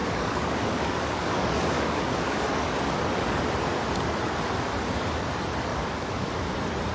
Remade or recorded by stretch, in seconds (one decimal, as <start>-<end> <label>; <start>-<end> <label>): 0.0-3.4 remade; 3.4-5.7 recorded; 5.7-6.3 remade; 6.3-6.9 recorded

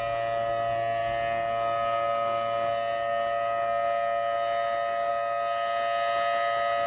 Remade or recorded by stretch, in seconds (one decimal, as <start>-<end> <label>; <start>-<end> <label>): 0.0-6.9 recorded

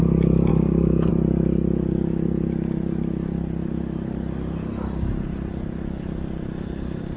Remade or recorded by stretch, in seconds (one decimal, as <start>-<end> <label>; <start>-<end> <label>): 0.0-0.5 recorded; 0.5-1.1 remade; 1.1-7.2 recorded

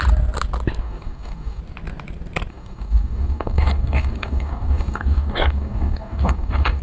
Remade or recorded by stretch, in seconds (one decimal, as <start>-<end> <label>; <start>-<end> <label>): 0.0-0.8 recorded; 0.8-1.6 remade; 1.6-2.5 recorded; 2.5-6.8 remade

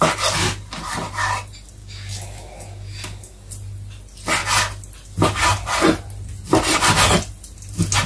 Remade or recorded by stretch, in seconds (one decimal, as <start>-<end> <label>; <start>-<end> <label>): 0.0-1.8 recorded; 1.8-3.5 remade; 3.5-8.1 recorded